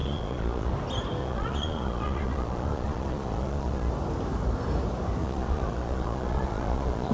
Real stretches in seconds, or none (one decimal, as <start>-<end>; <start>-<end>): 0.7-1.2; 3.9-5.2